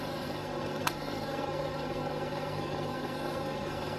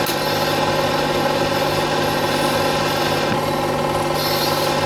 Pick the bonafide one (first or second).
second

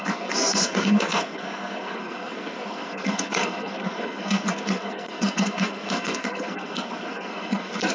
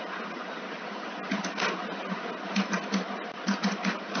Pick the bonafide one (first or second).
second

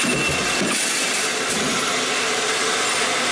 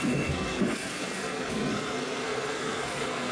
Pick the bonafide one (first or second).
first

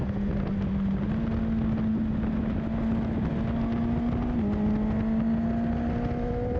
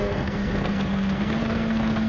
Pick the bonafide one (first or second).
first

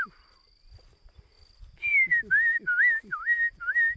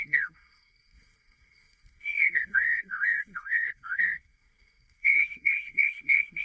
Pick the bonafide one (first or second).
first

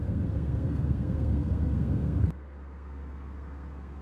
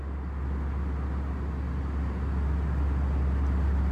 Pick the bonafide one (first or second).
second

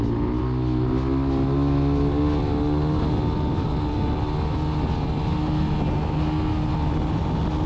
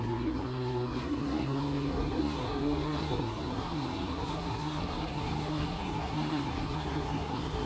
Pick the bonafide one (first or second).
first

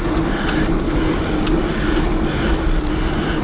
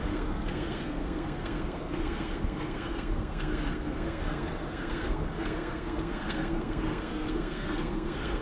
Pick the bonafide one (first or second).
first